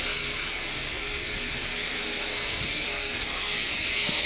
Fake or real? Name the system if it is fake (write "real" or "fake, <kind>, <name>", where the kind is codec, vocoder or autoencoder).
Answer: fake, codec, SNAC